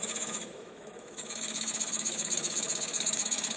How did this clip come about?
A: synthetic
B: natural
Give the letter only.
A